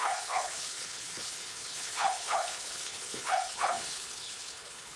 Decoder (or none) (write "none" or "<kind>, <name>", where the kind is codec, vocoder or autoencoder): codec, HILCodec